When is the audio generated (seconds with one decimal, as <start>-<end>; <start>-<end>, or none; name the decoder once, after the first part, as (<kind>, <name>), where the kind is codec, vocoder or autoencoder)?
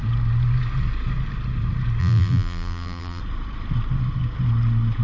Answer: 2.0-3.2 (vocoder, BigVGAN v2)